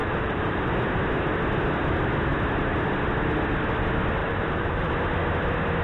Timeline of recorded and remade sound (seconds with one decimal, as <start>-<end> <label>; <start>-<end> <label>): 0.0-0.7 remade; 0.7-4.2 recorded; 4.2-4.9 remade; 4.9-5.8 recorded